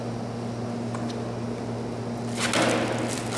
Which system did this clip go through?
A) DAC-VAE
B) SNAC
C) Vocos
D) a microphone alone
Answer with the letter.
D